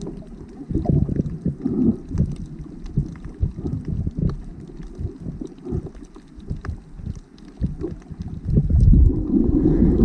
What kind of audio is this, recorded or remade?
recorded